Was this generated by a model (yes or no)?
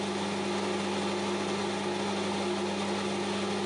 no